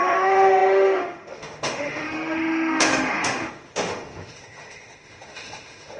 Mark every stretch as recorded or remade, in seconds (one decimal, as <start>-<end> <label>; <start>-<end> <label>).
0.0-6.0 remade